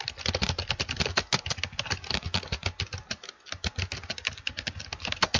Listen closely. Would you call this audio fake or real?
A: real